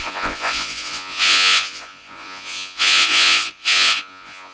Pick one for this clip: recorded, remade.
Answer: remade